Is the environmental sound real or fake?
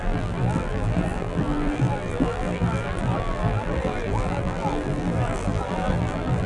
fake